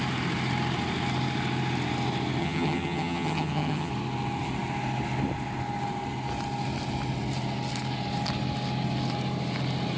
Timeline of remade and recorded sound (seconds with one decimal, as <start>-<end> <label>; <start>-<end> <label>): 0.0-2.4 recorded; 2.4-3.9 remade; 3.9-10.0 recorded